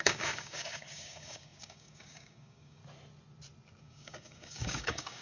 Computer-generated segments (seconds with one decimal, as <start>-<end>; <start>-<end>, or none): 0.0-2.8; 3.8-5.2